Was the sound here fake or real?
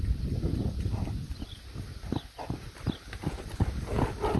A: real